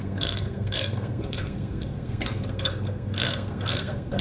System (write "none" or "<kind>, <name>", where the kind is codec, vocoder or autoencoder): codec, SNAC